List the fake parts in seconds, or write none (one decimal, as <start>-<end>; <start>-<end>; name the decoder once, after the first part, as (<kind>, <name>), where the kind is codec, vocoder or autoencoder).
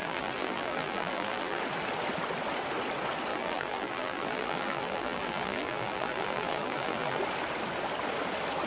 0.0-1.6 (vocoder, BigVGAN v2); 3.3-7.2